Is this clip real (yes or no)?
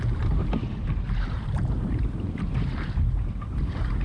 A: no